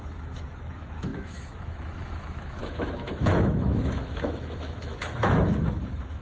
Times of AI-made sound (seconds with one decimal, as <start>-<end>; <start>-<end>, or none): 0.0-6.2